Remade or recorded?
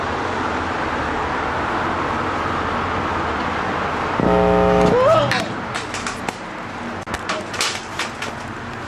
recorded